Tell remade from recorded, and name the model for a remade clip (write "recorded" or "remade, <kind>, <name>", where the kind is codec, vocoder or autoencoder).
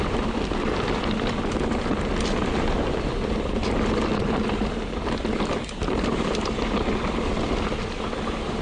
recorded